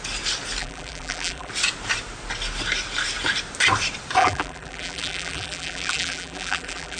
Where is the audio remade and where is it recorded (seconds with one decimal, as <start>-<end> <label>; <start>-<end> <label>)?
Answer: 0.0-0.6 recorded; 0.6-1.5 remade; 1.5-4.2 recorded; 4.2-7.0 remade